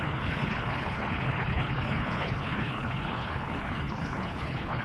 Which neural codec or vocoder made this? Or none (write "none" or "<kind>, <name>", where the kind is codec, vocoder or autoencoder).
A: codec, HILCodec